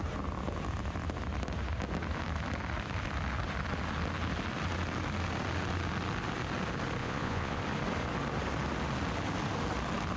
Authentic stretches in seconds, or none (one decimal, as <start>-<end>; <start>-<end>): 0.0-7.0; 7.6-10.2

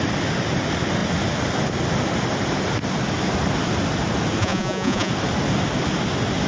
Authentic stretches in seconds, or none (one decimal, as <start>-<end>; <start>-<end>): 0.0-4.4; 5.1-6.5

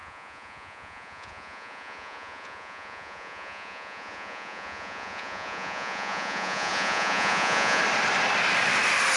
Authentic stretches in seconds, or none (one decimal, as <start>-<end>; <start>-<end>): 7.8-9.2

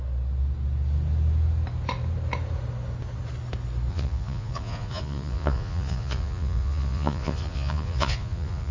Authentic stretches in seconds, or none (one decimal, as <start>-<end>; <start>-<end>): 0.0-3.9

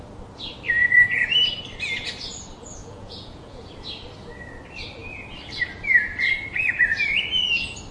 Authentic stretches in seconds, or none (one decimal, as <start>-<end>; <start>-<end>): 0.0-0.8; 1.3-2.8; 3.7-7.9